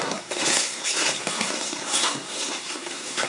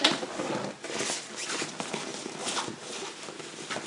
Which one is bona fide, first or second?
second